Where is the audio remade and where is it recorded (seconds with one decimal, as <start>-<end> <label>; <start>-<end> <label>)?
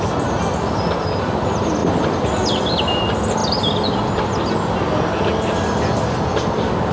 0.0-6.9 recorded